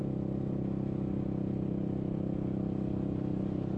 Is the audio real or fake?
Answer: real